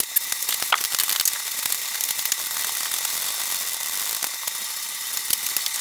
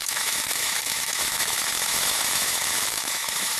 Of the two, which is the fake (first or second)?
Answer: second